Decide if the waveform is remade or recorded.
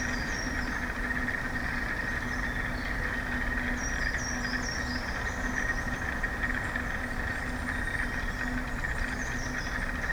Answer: recorded